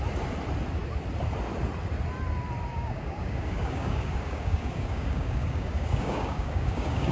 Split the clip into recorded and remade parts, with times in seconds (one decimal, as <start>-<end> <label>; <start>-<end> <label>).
0.0-2.7 recorded; 2.7-7.1 remade